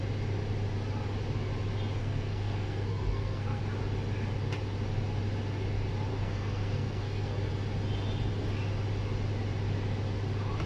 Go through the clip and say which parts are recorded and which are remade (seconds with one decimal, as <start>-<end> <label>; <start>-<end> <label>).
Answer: 0.0-2.0 recorded; 2.0-3.6 remade; 3.6-6.1 recorded; 6.1-7.5 remade; 7.5-10.7 recorded